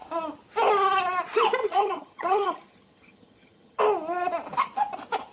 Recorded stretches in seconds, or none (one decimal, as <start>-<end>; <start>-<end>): 0.0-1.6; 3.8-5.3